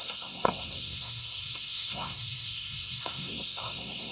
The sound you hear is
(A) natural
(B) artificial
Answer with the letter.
B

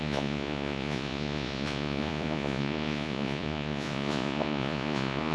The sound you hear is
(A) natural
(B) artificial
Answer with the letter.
B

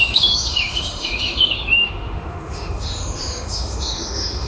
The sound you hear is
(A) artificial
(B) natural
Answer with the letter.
A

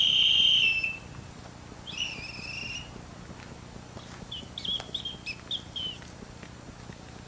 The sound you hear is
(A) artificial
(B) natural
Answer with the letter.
B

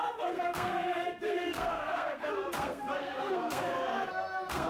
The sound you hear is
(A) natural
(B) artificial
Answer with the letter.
B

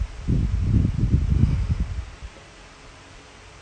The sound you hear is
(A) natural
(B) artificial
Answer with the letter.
A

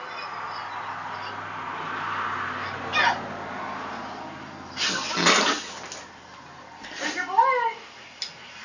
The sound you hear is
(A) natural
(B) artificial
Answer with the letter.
A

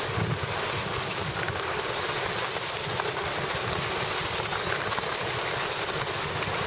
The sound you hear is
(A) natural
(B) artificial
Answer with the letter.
A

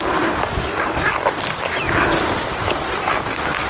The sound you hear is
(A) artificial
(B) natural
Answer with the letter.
B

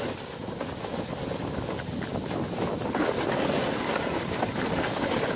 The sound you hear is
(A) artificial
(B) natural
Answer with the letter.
B